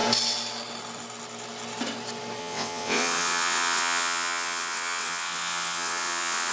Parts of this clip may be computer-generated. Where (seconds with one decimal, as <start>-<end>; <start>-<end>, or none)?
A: 2.4-6.5